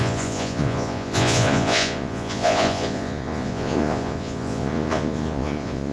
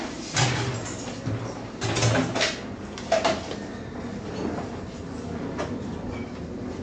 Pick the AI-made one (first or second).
first